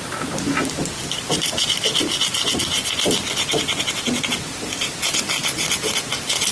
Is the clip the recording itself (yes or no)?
yes